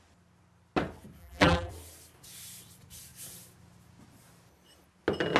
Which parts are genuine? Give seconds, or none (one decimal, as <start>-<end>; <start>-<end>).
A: 0.0-1.2; 1.7-5.4